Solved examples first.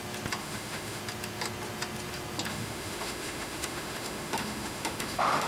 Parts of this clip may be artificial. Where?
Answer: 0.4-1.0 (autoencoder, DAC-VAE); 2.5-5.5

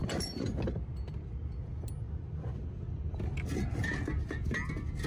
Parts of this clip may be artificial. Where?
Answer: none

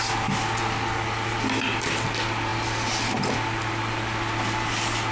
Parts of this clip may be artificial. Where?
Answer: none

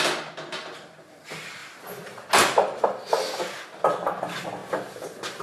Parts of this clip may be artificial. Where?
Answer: none

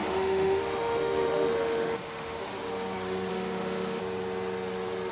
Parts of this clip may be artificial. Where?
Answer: 0.0-2.5 (autoencoder, DAC-VAE); 3.3-4.0

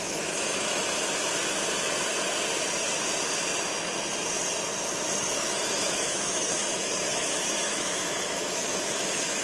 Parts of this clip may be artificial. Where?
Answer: 0.0-0.8 (autoencoder, DAC-VAE); 5.2-9.4

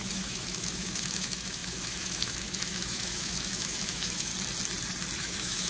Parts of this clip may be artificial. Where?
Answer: 0.0-4.3 (autoencoder, DAC-VAE); 5.2-5.7